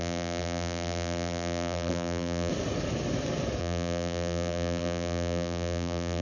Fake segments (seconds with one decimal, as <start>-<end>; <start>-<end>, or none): 0.0-2.5; 3.6-6.2